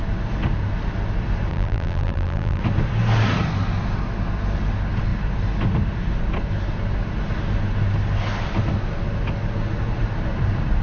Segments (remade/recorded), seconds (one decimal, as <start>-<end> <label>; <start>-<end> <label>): 0.0-1.5 recorded; 1.5-2.6 remade; 2.6-10.8 recorded

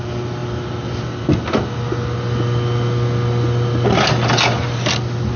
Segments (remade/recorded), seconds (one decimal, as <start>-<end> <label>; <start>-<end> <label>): 0.0-5.4 recorded

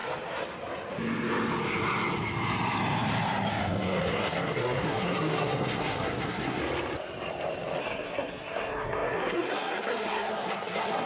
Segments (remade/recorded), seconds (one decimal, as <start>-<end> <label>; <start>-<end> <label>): 0.0-3.5 recorded; 3.5-6.6 remade; 6.6-7.8 recorded; 7.8-11.1 remade

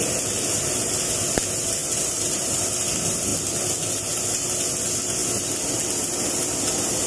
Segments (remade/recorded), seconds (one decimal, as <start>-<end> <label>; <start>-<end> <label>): 0.0-1.8 recorded; 1.8-2.4 remade; 2.4-7.1 recorded

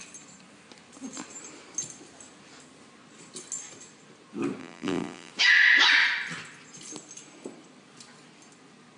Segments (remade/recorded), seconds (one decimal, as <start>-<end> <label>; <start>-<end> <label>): 0.0-4.6 recorded; 4.6-5.3 remade; 5.3-9.0 recorded